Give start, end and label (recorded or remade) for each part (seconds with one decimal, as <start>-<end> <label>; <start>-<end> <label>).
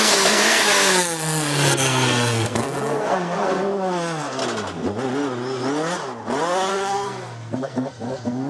0.0-4.4 remade; 4.4-6.7 recorded; 6.7-8.5 remade